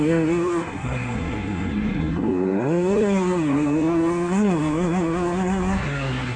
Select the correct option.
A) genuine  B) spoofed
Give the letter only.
B